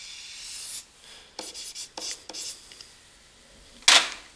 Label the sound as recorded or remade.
recorded